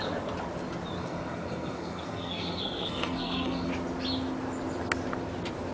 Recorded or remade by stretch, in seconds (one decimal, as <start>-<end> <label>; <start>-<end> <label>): 0.0-1.0 recorded; 1.0-3.7 remade; 3.7-5.7 recorded